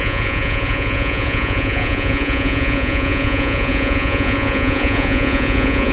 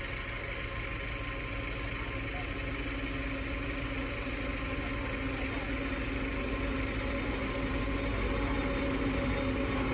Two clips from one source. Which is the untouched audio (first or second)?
second